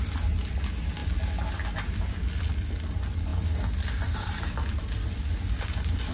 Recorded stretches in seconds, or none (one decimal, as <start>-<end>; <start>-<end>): 0.0-6.1